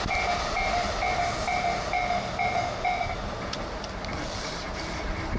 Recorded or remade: remade